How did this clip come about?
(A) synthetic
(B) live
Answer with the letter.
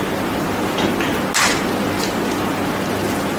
B